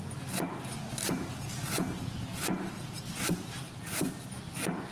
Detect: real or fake real